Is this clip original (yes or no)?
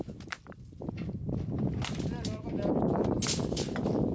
yes